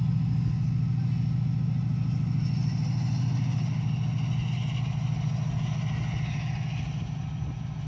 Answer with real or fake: real